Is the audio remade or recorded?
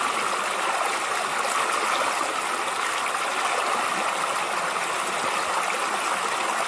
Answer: recorded